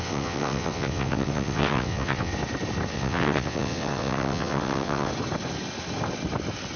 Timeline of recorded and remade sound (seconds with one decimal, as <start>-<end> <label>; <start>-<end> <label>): 0.0-2.3 remade; 2.3-2.9 recorded; 2.9-5.1 remade; 5.1-6.8 recorded